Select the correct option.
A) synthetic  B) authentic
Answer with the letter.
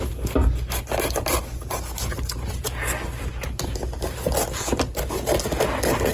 B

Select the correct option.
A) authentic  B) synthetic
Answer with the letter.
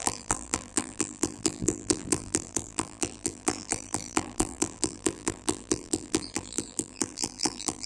B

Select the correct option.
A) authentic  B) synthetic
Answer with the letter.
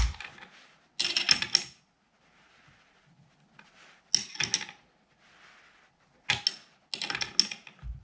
A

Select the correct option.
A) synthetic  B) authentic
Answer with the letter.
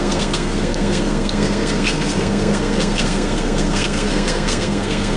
A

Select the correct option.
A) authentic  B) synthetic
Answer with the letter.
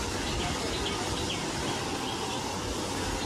A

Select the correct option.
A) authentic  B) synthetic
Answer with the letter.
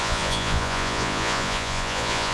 B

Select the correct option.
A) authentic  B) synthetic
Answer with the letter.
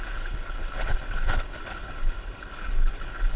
B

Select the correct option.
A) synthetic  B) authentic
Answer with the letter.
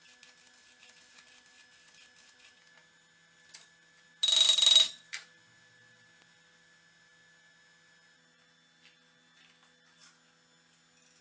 B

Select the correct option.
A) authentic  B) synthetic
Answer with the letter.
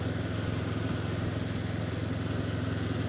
A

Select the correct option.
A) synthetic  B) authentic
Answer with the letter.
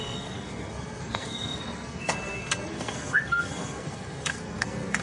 A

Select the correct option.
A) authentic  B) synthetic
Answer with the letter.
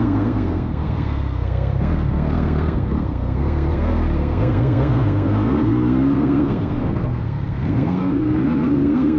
B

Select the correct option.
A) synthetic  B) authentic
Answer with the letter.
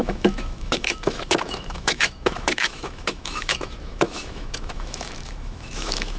A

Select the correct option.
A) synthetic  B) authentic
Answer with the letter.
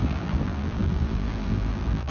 A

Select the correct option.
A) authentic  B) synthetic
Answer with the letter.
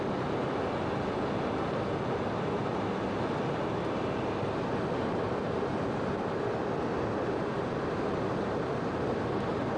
A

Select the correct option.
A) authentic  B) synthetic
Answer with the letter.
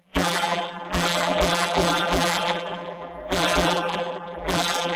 B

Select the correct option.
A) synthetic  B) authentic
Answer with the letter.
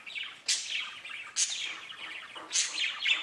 B